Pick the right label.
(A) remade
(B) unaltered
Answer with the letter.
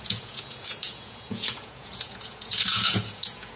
A